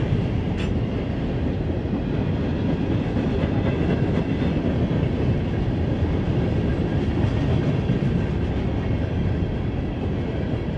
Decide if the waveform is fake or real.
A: real